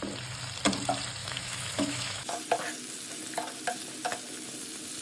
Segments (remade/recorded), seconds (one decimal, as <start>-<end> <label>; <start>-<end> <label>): 0.0-1.2 recorded; 1.2-2.3 remade; 2.3-5.0 recorded